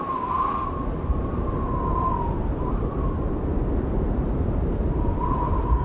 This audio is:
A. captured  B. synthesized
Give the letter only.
A